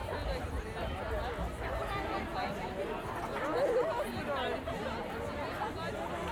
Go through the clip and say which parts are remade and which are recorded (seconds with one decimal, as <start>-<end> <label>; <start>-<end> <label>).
0.0-6.3 recorded